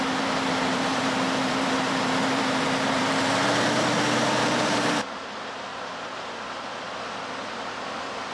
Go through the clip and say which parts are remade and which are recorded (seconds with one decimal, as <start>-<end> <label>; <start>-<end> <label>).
0.0-5.7 remade; 5.7-7.0 recorded; 7.0-8.3 remade